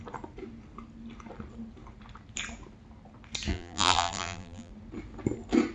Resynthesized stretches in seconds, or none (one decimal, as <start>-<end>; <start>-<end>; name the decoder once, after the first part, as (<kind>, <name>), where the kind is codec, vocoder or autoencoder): 3.5-4.7 (vocoder, BigVGAN v2)